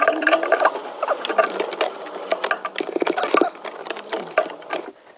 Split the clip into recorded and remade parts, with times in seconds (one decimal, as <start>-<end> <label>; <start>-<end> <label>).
0.0-1.3 remade; 1.3-3.5 recorded; 3.5-5.2 remade